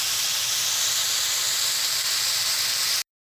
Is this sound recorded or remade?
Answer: recorded